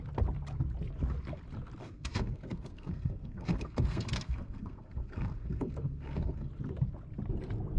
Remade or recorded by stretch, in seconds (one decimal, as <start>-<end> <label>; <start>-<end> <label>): 0.0-1.8 recorded; 1.8-6.5 remade; 6.5-7.8 recorded